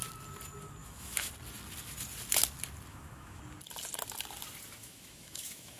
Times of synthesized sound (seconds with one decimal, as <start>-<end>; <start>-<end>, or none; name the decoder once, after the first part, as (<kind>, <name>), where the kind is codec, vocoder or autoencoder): 0.8-1.3 (autoencoder, DAC-VAE); 2.9-3.4; 4.8-5.8